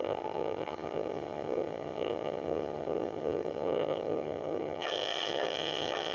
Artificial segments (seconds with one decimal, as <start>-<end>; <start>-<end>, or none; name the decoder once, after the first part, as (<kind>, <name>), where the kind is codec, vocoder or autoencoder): 0.0-6.1 (vocoder, HiFi-GAN)